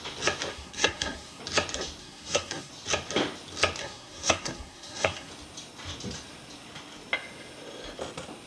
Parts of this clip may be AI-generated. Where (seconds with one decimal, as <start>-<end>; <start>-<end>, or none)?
0.5-1.4; 2.0-2.7; 3.8-5.3